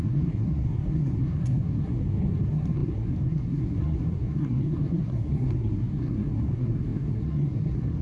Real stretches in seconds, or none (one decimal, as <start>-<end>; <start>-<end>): none